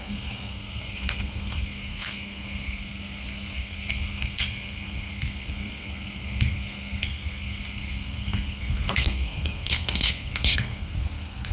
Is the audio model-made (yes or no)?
yes